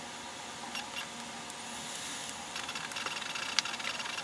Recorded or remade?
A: recorded